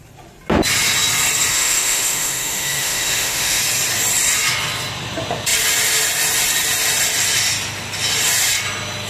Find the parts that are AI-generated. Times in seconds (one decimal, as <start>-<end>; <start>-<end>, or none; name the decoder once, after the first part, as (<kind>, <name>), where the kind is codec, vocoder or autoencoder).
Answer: 1.5-3.6 (autoencoder, DAC-VAE)